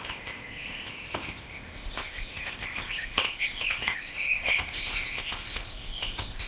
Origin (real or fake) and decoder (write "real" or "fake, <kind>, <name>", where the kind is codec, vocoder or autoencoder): fake, codec, ZipCodec